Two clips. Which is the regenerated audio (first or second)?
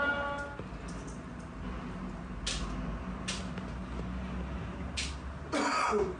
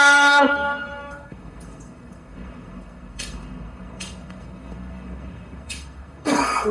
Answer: second